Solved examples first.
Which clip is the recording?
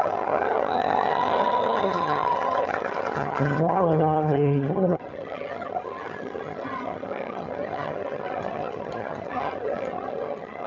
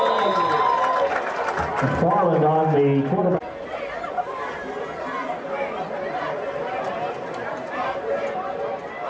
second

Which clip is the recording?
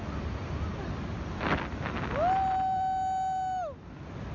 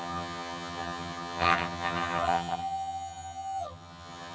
first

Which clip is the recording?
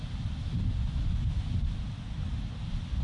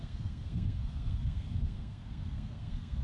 first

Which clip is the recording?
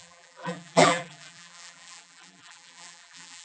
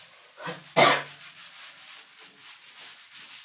second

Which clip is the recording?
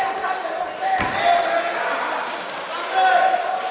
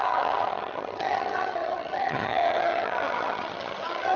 first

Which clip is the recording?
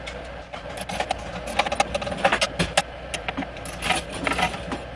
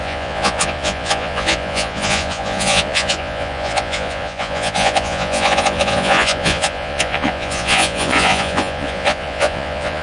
first